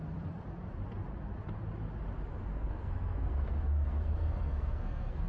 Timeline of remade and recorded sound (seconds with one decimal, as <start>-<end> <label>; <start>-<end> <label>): 0.0-2.5 recorded; 2.5-5.3 remade